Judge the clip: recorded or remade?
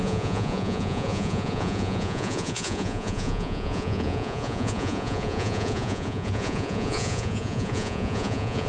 remade